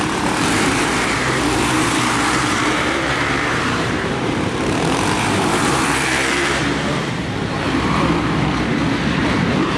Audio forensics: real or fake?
fake